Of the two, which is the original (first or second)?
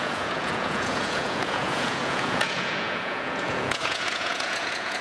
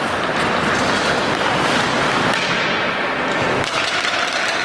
second